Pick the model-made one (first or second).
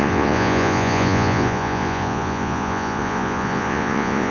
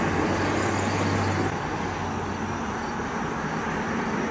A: first